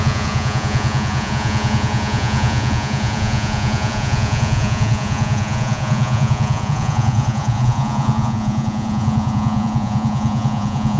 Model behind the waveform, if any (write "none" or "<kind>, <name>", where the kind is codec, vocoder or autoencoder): vocoder, Vocos